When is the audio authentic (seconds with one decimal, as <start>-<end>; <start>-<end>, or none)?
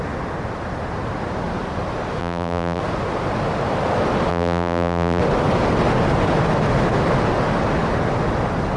0.0-2.2; 2.8-4.3; 5.2-8.8